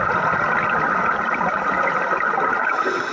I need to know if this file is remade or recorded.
recorded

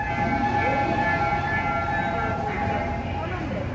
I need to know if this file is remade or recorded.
recorded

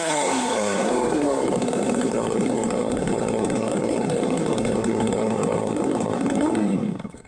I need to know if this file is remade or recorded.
remade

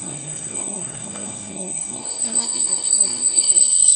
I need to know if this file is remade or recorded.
remade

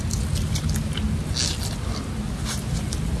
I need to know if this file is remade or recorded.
recorded